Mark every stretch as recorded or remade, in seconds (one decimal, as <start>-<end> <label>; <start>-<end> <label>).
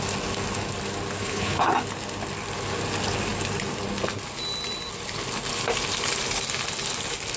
0.0-1.2 recorded; 1.2-1.7 remade; 1.7-7.4 recorded